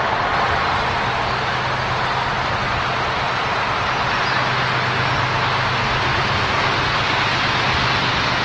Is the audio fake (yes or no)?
no